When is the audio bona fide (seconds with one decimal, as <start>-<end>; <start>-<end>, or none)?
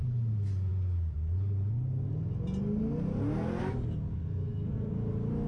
0.0-4.1; 4.9-5.5